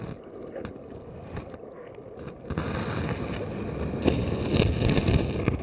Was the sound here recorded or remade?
recorded